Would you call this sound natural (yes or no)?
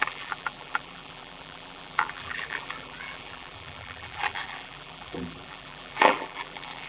no